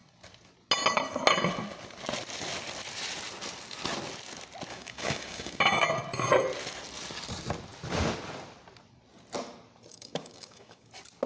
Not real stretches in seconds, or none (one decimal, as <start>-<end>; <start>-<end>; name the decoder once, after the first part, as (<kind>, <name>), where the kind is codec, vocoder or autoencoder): 4.7-5.6 (codec, DAC); 9.9-10.9